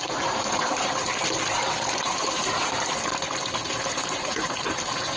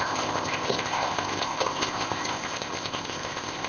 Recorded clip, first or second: first